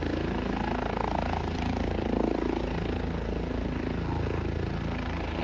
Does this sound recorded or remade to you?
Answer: recorded